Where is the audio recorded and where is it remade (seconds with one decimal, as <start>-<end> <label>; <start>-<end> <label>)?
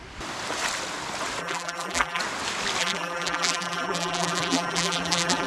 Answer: 0.0-1.4 recorded; 1.4-2.2 remade; 2.2-2.8 recorded; 2.8-5.5 remade